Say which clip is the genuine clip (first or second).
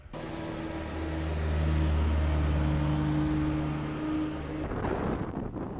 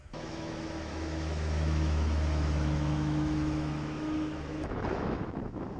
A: first